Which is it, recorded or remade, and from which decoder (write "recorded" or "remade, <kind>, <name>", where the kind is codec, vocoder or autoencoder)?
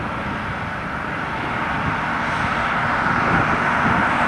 recorded